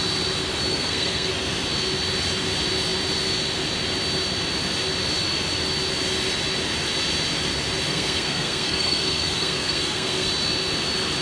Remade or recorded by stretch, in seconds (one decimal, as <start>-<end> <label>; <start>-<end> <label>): 0.0-0.7 recorded; 0.7-1.3 remade; 1.3-7.9 recorded; 7.9-10.3 remade; 10.3-11.2 recorded